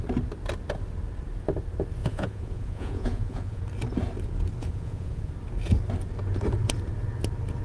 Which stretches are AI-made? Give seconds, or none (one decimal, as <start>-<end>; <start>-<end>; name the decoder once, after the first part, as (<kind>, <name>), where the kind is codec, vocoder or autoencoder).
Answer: 2.0-3.6 (vocoder, Vocos); 4.6-5.3